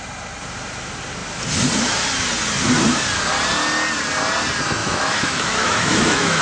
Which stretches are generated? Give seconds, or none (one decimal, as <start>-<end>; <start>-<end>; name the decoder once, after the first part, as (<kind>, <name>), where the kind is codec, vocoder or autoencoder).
4.8-6.4 (autoencoder, DAC-VAE)